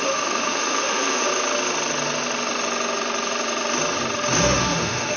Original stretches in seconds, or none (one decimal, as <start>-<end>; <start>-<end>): 1.3-4.4